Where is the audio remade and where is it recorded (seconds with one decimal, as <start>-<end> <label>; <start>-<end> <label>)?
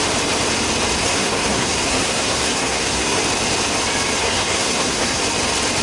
0.0-1.0 recorded; 1.0-3.2 remade; 3.2-4.2 recorded; 4.2-5.2 remade; 5.2-5.8 recorded